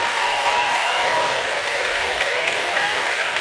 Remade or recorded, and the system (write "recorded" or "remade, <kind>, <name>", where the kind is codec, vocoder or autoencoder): remade, codec, DAC